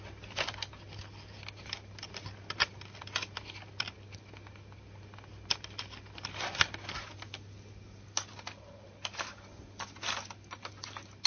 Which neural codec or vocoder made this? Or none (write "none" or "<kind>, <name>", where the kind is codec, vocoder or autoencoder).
none